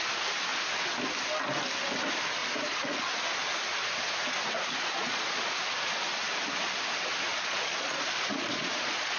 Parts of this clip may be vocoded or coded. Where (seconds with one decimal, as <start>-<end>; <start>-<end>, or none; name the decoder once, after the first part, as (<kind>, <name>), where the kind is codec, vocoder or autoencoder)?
2.4-3.2 (vocoder, Vocos); 4.9-5.4; 7.3-9.2